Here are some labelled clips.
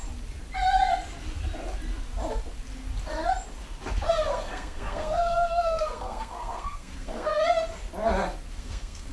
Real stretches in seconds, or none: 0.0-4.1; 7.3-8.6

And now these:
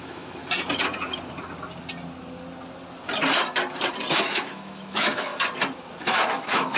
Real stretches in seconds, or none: 0.4-4.1; 5.3-6.0

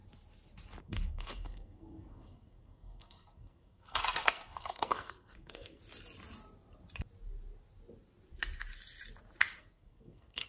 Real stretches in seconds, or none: 0.0-0.8; 5.8-9.6

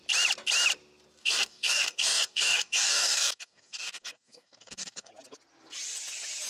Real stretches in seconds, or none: 0.0-1.2; 5.1-6.5

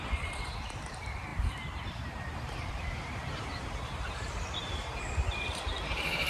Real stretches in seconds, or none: none

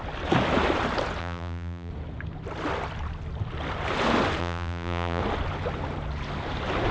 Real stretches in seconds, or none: 0.0-1.2; 1.9-4.4; 5.2-6.9

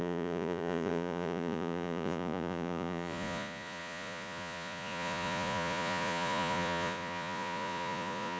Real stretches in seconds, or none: none